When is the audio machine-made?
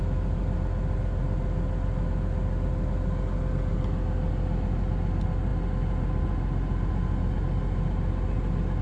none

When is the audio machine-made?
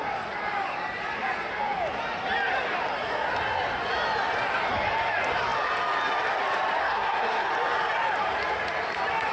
6.8-7.5 (codec, SNAC)